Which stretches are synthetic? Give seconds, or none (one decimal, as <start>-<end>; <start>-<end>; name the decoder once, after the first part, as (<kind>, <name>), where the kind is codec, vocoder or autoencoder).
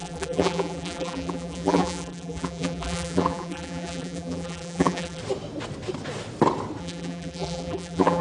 0.0-5.2 (vocoder, BigVGAN v2); 6.8-8.2